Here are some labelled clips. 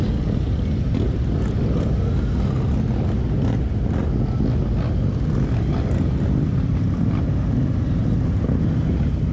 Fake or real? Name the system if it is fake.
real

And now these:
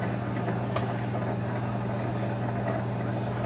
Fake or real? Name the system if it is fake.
real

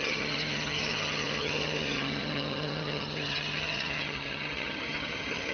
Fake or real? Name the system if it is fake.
fake, vocoder, HiFi-GAN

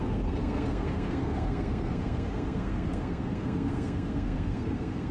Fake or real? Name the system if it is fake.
fake, codec, SNAC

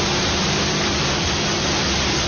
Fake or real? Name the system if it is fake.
fake, vocoder, BigVGAN v2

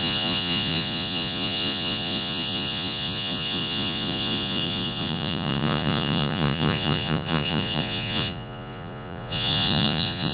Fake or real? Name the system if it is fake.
fake, vocoder, Vocos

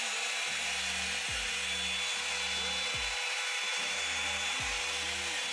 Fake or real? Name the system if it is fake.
real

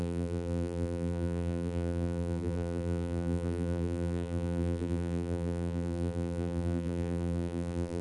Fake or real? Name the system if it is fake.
fake, vocoder, BigVGAN v2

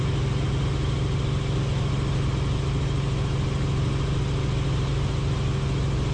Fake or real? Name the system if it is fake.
real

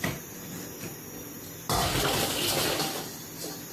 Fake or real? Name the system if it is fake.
fake, vocoder, BigVGAN v2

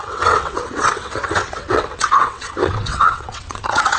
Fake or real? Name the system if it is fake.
fake, vocoder, WaveNeXt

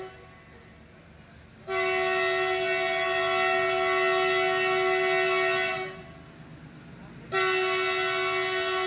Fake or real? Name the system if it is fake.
real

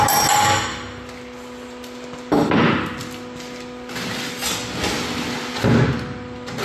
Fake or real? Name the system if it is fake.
real